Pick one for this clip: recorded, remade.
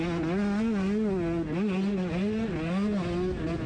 recorded